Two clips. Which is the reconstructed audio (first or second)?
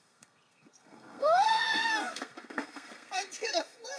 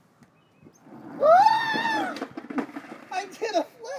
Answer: first